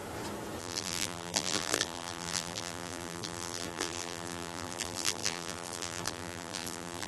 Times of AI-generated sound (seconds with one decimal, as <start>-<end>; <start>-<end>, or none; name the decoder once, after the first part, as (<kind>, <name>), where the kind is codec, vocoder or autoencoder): 0.6-7.1 (vocoder, BigVGAN v2)